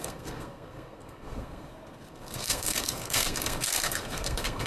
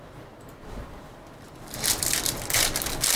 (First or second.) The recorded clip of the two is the second